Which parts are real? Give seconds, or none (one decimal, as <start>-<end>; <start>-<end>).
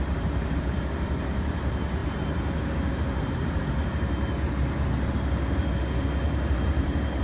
2.0-2.9; 3.6-6.2